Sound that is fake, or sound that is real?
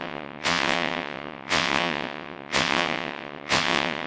fake